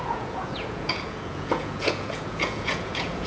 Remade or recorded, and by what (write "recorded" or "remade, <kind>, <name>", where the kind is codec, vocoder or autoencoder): remade, vocoder, Vocos